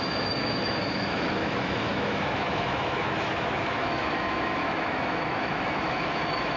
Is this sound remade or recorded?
remade